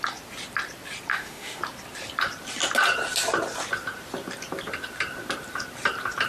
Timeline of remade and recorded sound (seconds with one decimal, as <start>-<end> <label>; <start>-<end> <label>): 0.0-1.1 recorded; 1.1-1.6 remade; 1.6-6.3 recorded

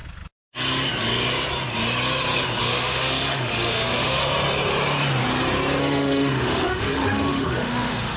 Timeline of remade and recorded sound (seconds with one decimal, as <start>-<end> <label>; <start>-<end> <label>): 0.0-2.6 recorded; 2.6-4.2 remade; 4.2-5.8 recorded; 5.8-8.2 remade

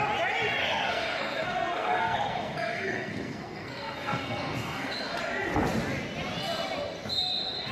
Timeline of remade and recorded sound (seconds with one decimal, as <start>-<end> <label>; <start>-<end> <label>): 0.0-0.6 recorded; 0.6-5.2 remade; 5.2-7.7 recorded

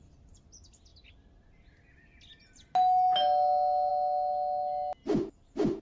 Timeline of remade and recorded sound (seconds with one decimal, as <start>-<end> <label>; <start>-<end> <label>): 0.0-5.8 recorded